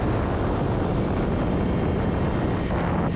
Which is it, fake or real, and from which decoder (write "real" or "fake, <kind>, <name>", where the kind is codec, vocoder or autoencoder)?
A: real